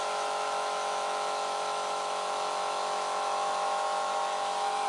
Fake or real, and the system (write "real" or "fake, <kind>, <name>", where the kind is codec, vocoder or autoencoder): fake, autoencoder, DAC-VAE